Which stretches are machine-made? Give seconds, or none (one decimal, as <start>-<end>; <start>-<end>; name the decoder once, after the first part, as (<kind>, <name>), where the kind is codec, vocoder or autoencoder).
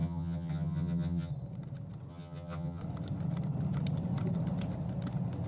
0.0-1.3 (vocoder, HiFi-GAN); 2.1-2.8